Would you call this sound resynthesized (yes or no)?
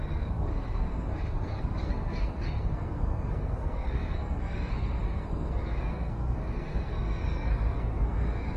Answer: yes